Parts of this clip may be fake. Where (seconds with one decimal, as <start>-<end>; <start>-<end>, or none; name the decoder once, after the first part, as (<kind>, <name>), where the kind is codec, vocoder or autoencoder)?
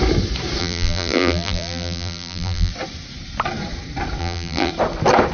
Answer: 0.6-2.7 (vocoder, BigVGAN v2); 4.2-4.7